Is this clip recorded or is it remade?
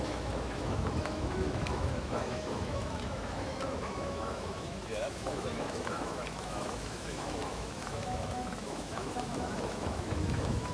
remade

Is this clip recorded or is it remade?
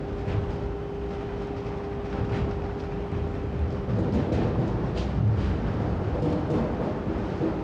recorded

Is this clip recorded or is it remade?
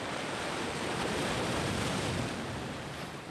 remade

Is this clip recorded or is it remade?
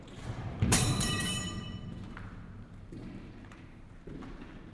remade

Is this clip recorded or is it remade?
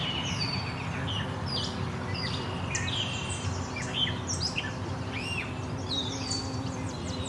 recorded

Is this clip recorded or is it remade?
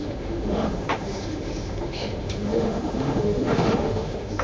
remade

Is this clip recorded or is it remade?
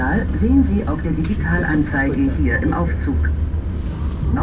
recorded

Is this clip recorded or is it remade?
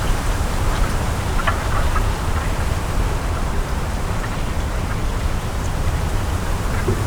remade